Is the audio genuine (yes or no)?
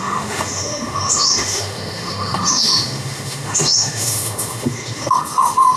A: no